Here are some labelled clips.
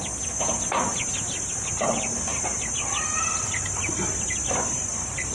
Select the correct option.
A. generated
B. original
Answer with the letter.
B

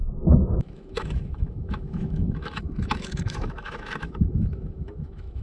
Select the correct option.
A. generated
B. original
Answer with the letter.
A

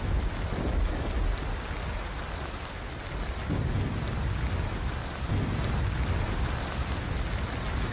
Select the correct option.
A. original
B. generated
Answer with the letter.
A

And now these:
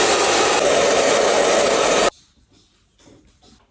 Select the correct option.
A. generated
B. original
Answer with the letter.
B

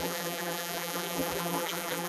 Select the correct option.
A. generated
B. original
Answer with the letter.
A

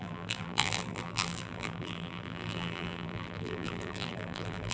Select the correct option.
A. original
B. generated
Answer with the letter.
B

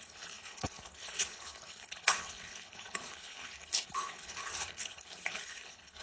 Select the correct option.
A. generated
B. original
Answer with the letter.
A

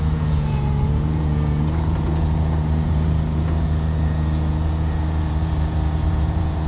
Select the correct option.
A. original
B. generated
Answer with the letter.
B